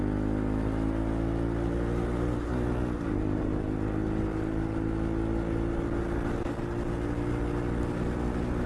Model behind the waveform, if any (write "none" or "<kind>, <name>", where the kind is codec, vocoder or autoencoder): none